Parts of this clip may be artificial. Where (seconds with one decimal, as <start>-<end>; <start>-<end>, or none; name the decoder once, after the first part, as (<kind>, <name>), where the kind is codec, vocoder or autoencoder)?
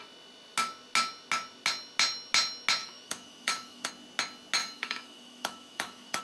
2.8-3.9 (autoencoder, DAC-VAE); 4.6-6.2